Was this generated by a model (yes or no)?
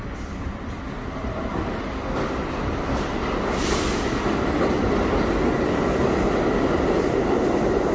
no